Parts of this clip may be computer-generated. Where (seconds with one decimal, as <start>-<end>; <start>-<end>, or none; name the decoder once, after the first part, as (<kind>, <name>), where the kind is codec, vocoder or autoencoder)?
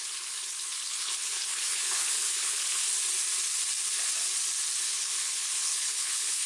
0.0-2.8 (codec, HILCodec); 4.8-6.5